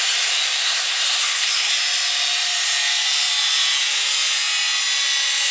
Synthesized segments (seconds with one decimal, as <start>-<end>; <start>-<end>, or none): 0.6-1.7